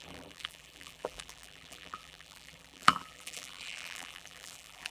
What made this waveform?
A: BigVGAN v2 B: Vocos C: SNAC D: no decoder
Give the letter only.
A